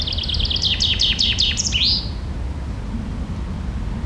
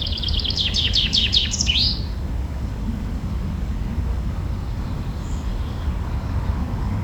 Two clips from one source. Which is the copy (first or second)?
second